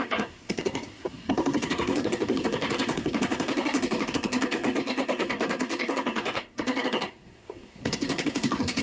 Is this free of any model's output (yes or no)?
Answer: no